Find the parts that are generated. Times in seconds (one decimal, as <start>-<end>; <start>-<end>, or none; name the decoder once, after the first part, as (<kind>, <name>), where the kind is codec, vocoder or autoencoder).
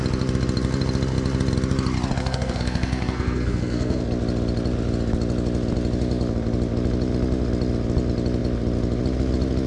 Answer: 2.2-4.0 (codec, SNAC)